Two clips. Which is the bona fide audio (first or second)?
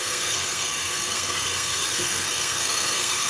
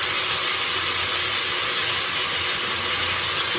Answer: second